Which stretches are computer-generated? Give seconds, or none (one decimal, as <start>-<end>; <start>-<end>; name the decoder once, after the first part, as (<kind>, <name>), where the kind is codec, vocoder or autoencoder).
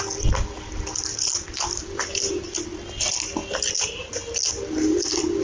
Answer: none